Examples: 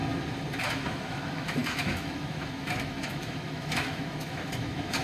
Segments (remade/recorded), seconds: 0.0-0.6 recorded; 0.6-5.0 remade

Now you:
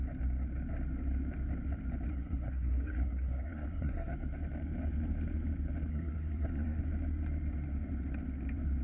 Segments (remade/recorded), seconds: 0.0-2.1 recorded; 2.1-4.1 remade; 4.1-5.9 recorded; 5.9-6.8 remade; 6.8-8.8 recorded